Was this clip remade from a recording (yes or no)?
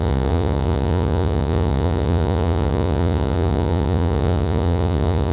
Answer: yes